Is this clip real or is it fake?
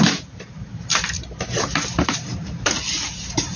fake